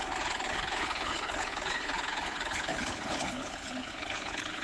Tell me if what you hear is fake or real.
fake